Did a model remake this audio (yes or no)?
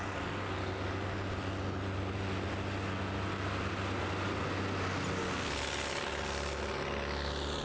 no